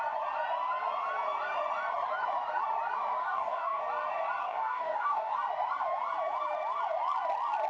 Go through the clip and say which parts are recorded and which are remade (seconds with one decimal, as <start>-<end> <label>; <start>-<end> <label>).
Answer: 0.0-3.2 recorded; 3.2-3.8 remade; 3.8-4.4 recorded; 4.4-5.3 remade; 5.3-7.7 recorded

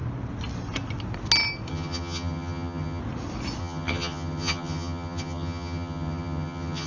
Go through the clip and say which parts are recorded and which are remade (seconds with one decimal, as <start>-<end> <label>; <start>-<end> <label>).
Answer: 0.0-1.7 recorded; 1.7-3.0 remade; 3.0-3.6 recorded; 3.6-6.9 remade

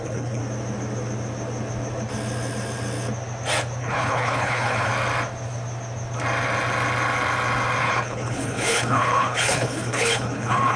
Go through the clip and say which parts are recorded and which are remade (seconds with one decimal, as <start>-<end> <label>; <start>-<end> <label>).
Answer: 0.0-0.4 remade; 0.4-3.8 recorded; 3.8-4.9 remade; 4.9-7.8 recorded; 7.8-10.8 remade